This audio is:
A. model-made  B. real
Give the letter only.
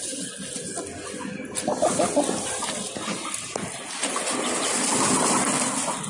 B